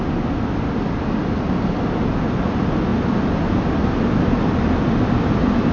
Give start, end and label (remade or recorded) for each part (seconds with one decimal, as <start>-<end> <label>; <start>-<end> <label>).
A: 0.0-5.7 recorded